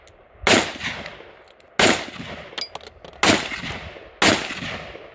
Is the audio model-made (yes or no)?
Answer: no